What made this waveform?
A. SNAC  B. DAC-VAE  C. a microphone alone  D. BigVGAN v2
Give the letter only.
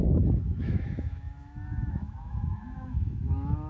B